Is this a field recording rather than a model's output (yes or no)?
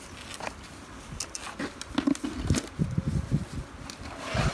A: yes